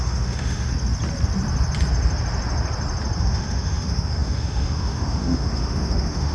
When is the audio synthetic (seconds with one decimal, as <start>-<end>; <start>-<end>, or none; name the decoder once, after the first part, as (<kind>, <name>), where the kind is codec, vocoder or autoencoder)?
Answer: 0.0-0.7 (autoencoder, DAC-VAE); 3.2-6.3